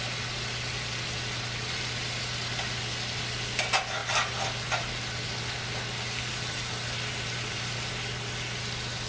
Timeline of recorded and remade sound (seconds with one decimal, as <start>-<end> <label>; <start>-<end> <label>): 0.0-9.1 recorded